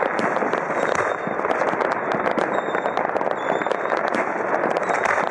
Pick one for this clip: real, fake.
real